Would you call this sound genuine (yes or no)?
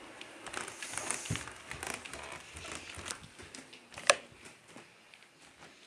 yes